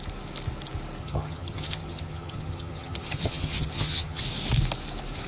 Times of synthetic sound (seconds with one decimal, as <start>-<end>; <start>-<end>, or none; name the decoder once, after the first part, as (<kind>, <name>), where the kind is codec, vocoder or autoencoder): 1.0-4.2 (vocoder, HiFi-GAN)